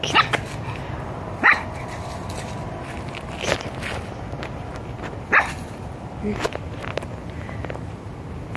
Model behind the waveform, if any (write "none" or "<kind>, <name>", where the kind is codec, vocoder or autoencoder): none